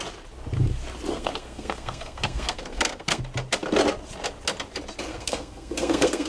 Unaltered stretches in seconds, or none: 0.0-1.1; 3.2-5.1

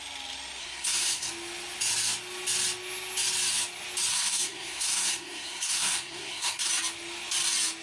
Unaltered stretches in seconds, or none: 0.0-0.6; 1.3-4.1; 6.7-7.8

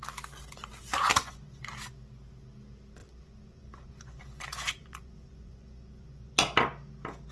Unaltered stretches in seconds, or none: 0.0-1.1; 1.6-3.0; 6.3-7.3

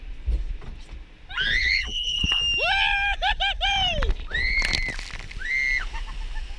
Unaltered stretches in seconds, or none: 0.0-1.6; 2.4-6.6

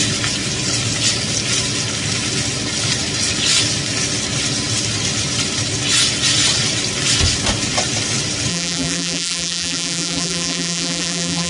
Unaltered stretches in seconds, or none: 0.0-8.5

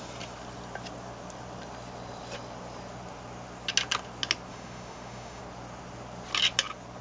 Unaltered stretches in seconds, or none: 0.0-4.5; 5.4-7.0